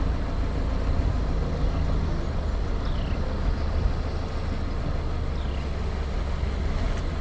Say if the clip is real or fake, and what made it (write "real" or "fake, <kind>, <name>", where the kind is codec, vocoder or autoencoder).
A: real